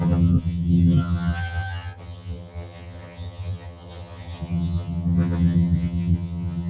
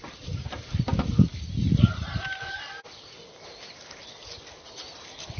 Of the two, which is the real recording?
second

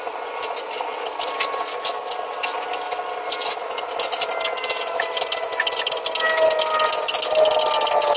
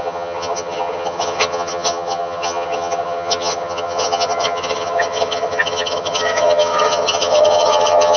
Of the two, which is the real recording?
first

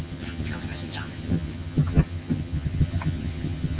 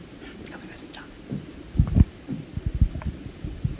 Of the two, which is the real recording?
second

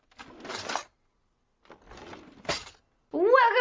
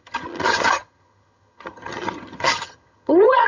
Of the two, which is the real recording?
first